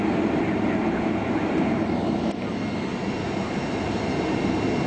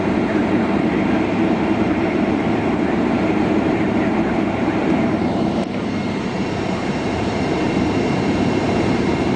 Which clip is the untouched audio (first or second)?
first